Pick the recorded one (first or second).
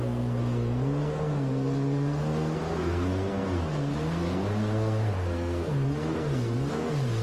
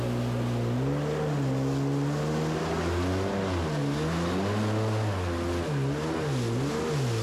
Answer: second